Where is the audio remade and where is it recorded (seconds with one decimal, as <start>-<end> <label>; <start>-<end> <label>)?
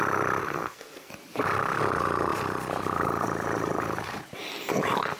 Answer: 0.0-0.4 recorded; 0.4-1.1 remade; 1.1-5.2 recorded